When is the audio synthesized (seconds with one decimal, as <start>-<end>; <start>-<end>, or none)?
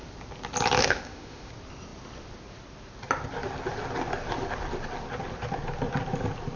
0.8-1.5